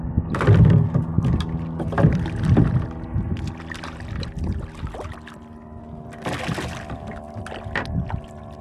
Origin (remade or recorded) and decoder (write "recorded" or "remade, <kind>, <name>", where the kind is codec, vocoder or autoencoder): recorded